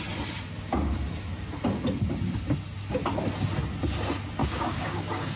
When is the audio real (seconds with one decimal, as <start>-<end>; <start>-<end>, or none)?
0.0-4.4